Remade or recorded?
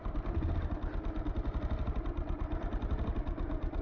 recorded